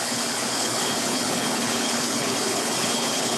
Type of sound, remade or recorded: remade